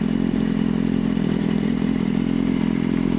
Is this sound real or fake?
fake